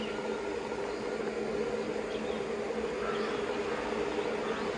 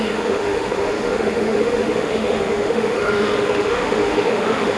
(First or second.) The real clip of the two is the first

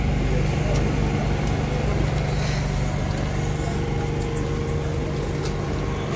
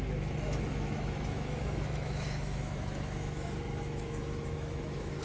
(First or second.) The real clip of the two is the first